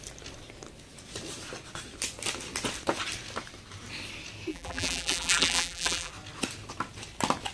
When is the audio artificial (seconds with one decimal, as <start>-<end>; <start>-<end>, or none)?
4.5-6.1